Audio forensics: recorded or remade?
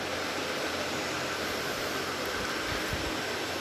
recorded